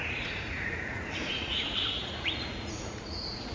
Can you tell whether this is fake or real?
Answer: fake